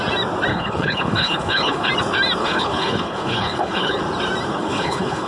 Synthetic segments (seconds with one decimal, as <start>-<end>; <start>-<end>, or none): 0.5-1.9; 2.4-4.0; 4.5-5.3